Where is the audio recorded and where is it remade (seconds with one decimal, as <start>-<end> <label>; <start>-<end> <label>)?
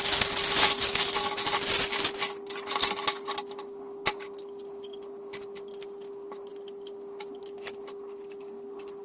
0.0-9.0 recorded